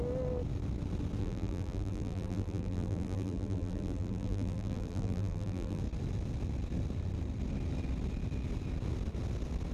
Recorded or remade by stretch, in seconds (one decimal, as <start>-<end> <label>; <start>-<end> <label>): 0.0-1.2 recorded; 1.2-5.8 remade; 5.8-9.7 recorded